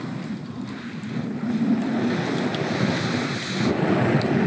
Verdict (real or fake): real